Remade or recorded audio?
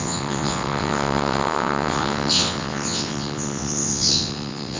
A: remade